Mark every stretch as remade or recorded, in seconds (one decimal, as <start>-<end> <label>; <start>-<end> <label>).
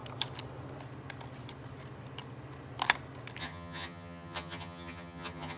0.0-3.4 recorded; 3.4-5.6 remade